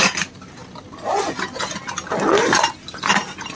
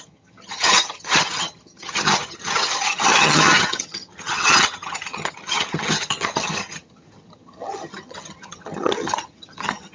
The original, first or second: first